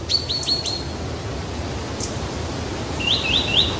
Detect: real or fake real